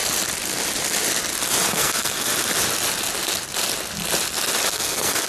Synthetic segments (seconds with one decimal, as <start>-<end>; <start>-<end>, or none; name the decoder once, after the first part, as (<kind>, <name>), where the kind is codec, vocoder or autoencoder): 1.7-2.3 (codec, SNAC); 4.7-5.3